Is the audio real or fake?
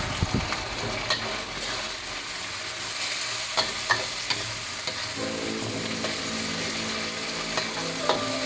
real